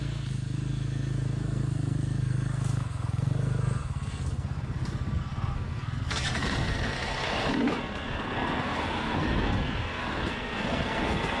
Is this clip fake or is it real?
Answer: fake